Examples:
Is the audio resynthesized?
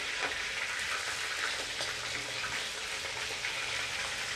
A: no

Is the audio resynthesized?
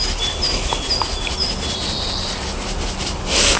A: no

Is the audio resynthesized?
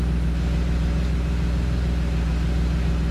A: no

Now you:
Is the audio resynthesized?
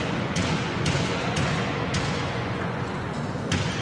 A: yes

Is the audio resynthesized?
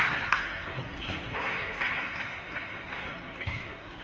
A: yes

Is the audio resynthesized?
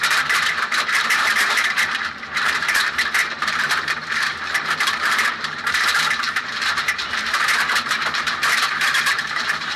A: yes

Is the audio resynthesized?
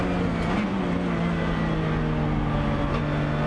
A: no